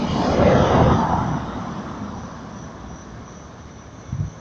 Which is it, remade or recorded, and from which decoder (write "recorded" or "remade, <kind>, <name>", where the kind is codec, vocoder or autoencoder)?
recorded